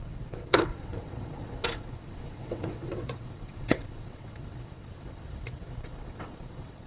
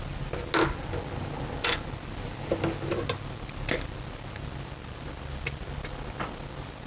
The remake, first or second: first